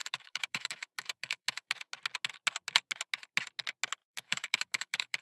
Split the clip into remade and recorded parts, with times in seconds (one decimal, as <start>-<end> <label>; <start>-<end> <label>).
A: 0.0-1.9 remade; 1.9-4.0 recorded; 4.0-5.2 remade